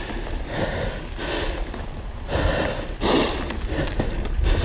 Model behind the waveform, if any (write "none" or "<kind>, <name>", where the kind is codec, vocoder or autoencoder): none